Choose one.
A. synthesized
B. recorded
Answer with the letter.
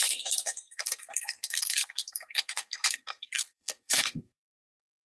A